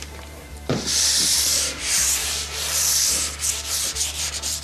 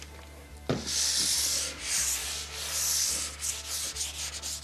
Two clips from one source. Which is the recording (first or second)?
second